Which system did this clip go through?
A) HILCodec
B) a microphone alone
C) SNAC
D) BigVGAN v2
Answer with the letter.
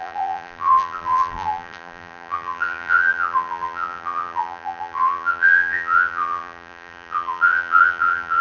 D